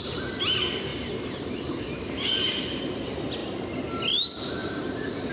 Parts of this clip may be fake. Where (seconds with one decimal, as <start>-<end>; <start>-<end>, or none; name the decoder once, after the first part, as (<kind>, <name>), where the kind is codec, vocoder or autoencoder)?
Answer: 0.9-2.9 (vocoder, BigVGAN v2); 4.6-5.3